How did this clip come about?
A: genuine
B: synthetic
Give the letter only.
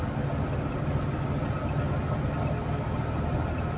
A